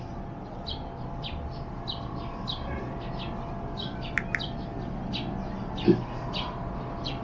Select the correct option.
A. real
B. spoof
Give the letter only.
A